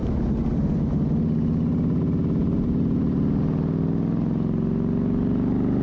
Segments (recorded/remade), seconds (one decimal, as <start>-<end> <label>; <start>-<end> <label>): 0.0-1.1 remade; 1.1-2.4 recorded; 2.4-3.4 remade; 3.4-5.8 recorded